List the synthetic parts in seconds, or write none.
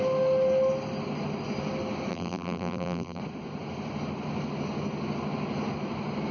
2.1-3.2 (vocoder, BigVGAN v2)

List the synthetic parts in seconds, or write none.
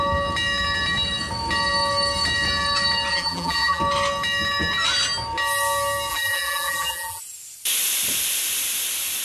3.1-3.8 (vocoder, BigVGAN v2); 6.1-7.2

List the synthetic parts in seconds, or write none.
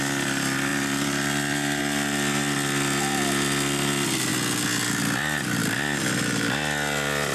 0.7-1.8 (vocoder, BigVGAN v2)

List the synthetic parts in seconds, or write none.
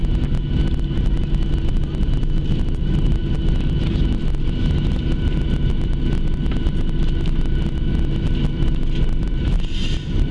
1.7-3.2 (vocoder, BigVGAN v2); 3.8-4.2; 9.2-10.3